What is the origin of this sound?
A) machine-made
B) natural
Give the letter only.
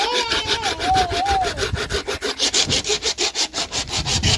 B